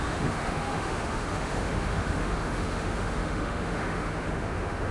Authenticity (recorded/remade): remade